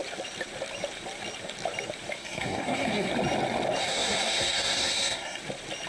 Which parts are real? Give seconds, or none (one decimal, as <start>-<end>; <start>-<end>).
0.0-2.2; 3.1-3.8; 5.4-5.9